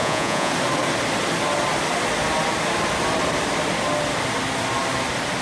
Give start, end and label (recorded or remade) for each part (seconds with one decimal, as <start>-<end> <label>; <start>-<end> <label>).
0.0-0.5 remade; 0.5-5.4 recorded